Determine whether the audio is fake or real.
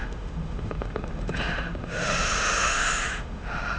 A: fake